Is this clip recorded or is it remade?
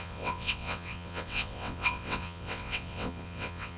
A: remade